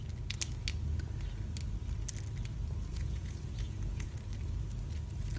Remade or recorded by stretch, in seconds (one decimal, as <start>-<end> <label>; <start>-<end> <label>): 0.0-2.9 recorded; 2.9-4.1 remade; 4.1-5.4 recorded